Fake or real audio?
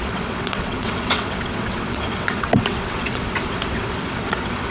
fake